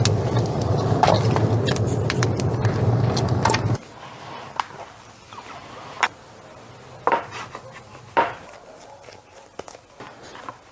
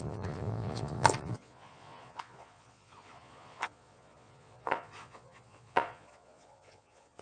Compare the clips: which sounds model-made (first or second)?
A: second